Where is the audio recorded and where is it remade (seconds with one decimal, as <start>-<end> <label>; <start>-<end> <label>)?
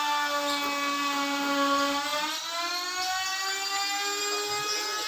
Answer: 0.0-5.1 recorded